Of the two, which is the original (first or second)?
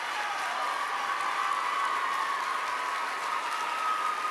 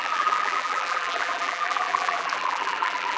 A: first